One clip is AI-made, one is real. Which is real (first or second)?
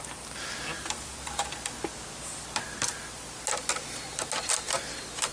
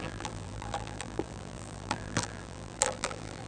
first